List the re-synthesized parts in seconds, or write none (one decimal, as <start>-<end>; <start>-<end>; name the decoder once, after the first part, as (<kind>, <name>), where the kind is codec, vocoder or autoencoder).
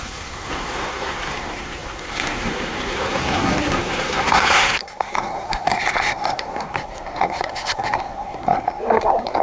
0.0-9.4 (codec, SNAC)